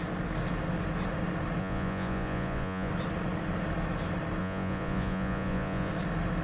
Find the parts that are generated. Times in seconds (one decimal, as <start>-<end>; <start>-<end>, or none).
1.6-2.9; 4.4-5.9